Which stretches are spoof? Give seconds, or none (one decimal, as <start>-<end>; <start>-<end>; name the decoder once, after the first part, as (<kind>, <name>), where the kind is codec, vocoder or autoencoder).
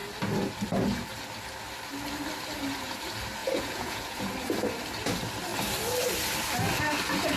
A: 3.4-4.2 (vocoder, Vocos)